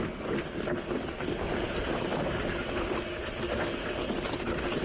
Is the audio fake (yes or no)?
no